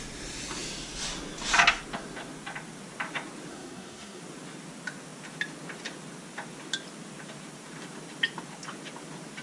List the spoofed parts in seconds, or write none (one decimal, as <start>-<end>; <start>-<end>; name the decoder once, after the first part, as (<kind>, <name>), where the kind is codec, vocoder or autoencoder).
3.5-4.2 (codec, SNAC)